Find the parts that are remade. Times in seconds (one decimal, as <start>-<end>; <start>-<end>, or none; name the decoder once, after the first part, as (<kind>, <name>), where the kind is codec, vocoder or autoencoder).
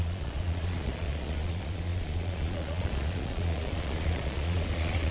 0.0-5.1 (vocoder, Vocos)